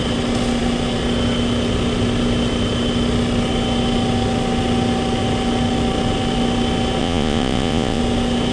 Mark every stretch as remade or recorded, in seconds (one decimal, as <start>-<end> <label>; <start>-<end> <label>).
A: 0.0-7.0 recorded; 7.0-8.0 remade; 8.0-8.5 recorded